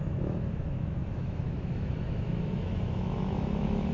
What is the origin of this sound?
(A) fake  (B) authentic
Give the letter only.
A